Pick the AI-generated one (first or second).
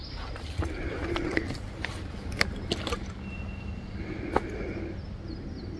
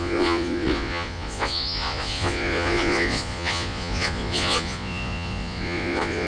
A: second